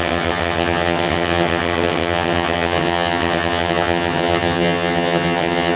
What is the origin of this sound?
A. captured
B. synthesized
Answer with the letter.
B